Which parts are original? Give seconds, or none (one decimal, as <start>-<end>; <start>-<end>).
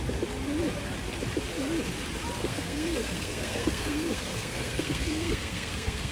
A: 0.0-2.4